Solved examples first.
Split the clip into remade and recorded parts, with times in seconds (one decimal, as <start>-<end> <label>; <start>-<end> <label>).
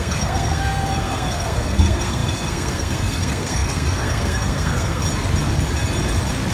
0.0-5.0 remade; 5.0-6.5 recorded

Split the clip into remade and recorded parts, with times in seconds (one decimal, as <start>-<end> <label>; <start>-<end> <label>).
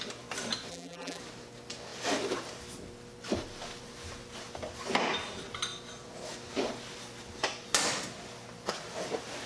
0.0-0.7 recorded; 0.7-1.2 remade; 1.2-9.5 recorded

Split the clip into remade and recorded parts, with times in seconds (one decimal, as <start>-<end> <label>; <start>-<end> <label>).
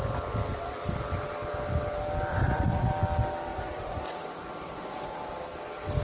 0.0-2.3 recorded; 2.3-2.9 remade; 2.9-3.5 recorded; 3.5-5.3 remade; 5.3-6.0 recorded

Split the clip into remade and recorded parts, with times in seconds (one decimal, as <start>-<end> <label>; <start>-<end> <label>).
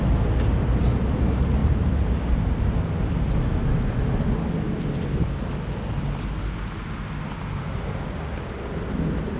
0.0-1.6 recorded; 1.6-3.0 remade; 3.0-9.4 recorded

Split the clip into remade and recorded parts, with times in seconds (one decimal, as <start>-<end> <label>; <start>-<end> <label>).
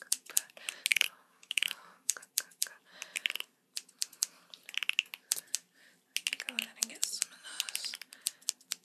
0.0-0.9 recorded; 0.9-2.3 remade; 2.3-8.8 recorded